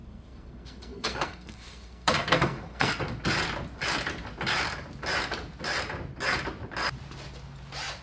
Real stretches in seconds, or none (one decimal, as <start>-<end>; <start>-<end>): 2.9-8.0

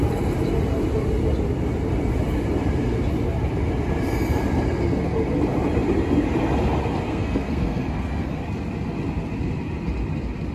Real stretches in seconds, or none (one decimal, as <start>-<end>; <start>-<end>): 0.0-7.1; 8.4-10.5

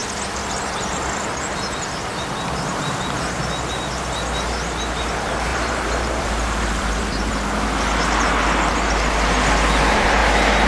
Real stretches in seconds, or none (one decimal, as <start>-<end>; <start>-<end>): 0.0-5.5; 7.3-10.7

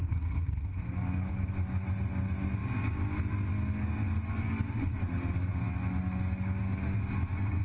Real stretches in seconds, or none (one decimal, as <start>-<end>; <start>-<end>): 0.0-7.6

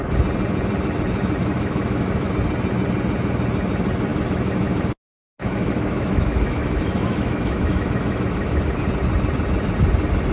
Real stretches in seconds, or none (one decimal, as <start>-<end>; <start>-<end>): 0.0-1.4; 2.3-4.1; 4.8-5.4; 8.7-10.3

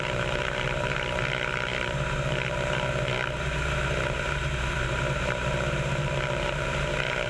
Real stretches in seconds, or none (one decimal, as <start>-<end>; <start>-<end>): none

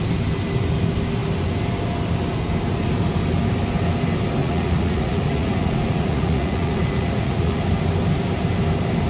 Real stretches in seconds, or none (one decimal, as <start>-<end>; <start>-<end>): 0.0-4.4; 7.6-9.1